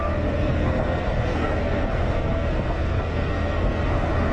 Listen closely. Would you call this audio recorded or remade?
remade